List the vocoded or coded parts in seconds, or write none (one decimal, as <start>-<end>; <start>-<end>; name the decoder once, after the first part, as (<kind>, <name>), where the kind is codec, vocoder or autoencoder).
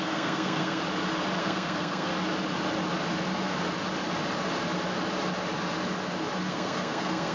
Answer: 0.0-0.8 (codec, SNAC); 1.4-2.1; 6.5-7.3